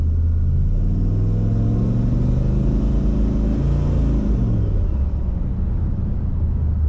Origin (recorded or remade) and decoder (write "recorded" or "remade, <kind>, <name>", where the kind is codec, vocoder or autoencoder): recorded